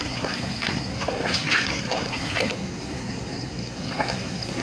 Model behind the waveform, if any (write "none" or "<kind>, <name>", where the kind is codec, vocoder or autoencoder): codec, SNAC